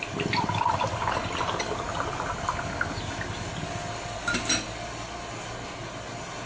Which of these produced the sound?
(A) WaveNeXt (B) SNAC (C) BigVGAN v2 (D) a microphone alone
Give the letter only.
D